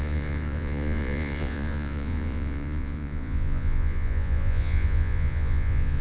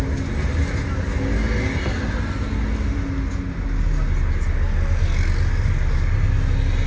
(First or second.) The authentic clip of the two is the second